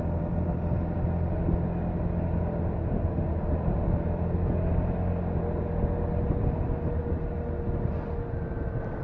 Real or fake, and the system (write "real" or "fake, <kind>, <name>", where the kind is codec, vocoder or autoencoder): real